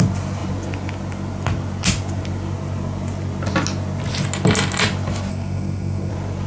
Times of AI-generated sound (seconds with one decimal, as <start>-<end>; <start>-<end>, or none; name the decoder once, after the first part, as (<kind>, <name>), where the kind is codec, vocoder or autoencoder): 5.3-6.1 (codec, SNAC)